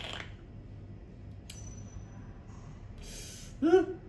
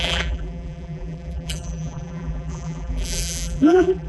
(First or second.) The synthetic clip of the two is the second